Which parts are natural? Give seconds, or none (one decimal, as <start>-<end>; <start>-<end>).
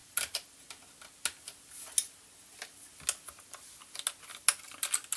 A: 0.0-5.2